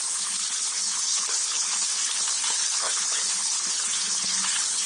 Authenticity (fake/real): fake